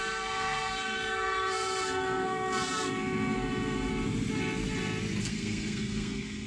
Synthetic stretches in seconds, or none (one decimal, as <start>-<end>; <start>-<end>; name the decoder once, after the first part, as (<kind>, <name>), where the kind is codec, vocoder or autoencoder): 0.0-3.9 (codec, SNAC); 5.2-6.5